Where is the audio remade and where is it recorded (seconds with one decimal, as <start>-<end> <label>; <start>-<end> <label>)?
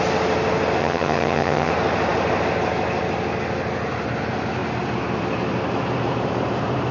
0.0-0.8 recorded; 0.8-1.7 remade; 1.7-6.9 recorded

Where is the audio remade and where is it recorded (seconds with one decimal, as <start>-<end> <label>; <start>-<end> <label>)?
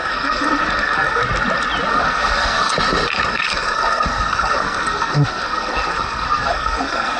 0.0-1.2 remade; 1.2-1.9 recorded; 1.9-2.7 remade; 2.7-3.3 recorded; 3.3-7.2 remade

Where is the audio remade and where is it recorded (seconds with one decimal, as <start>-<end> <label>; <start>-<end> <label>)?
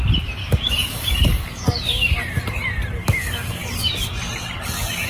0.0-0.4 recorded; 0.4-2.2 remade; 2.2-3.0 recorded; 3.0-4.3 remade; 4.3-5.1 recorded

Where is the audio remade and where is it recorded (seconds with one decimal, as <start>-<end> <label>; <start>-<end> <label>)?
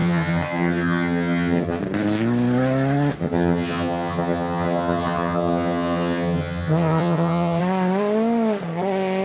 0.0-1.8 remade; 1.8-3.2 recorded; 3.2-7.6 remade; 7.6-9.2 recorded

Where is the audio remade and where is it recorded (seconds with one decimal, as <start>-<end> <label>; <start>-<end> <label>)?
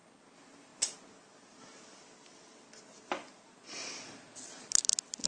0.0-5.3 recorded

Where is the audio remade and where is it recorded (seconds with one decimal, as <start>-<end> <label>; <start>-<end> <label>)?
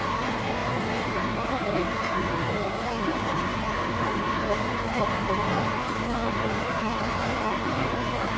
0.0-8.4 remade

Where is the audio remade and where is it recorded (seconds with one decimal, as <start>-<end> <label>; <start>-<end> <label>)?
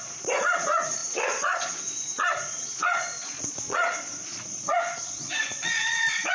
0.0-6.3 remade